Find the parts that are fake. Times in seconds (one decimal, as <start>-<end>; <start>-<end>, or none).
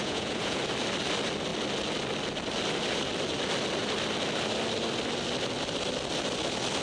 0.0-0.6